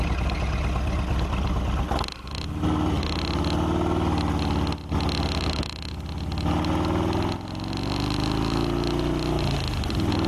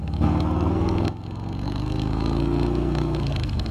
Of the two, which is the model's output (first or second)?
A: second